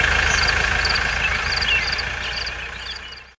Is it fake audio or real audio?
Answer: real